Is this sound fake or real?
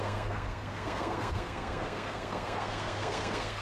fake